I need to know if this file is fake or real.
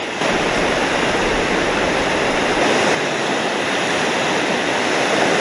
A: fake